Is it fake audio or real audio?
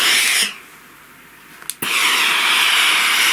real